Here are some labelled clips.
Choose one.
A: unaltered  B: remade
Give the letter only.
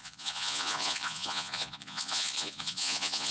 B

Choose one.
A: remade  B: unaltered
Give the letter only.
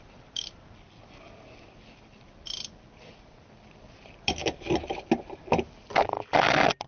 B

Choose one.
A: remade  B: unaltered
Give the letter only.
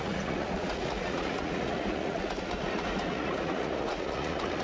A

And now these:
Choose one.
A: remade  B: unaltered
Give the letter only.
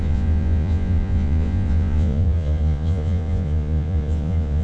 A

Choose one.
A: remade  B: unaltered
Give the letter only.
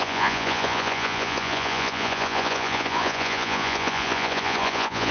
A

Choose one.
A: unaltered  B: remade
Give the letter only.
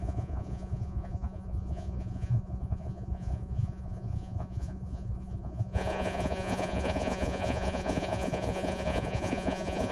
B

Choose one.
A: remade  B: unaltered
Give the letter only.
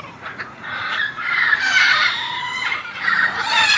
A